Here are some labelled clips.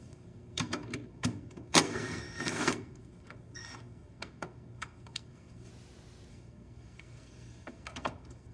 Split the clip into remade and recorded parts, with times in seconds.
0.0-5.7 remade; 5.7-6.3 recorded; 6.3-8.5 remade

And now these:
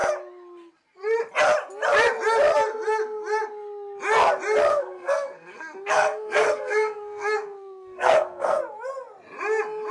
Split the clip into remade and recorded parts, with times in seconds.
0.0-4.7 recorded; 4.7-8.6 remade; 8.6-9.9 recorded

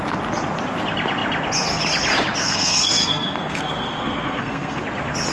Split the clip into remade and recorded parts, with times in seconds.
0.0-2.4 recorded; 2.4-4.8 remade; 4.8-5.3 recorded

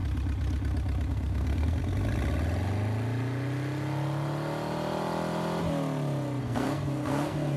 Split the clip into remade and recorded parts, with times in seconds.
0.0-1.1 recorded; 1.1-1.8 remade; 1.8-6.4 recorded; 6.4-7.6 remade

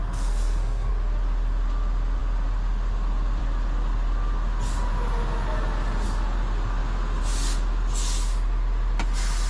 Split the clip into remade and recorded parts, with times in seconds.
0.0-0.9 remade; 0.9-9.5 recorded

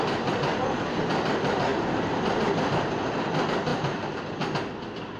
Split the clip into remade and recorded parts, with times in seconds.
0.0-5.2 recorded

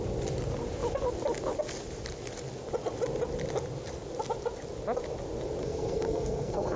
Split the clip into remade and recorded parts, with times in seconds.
0.0-5.6 recorded; 5.6-6.8 remade

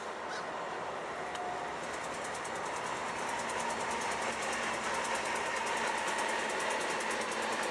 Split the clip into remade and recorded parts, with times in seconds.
0.0-7.7 recorded